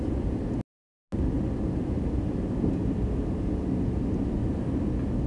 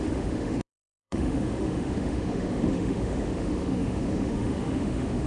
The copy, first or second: second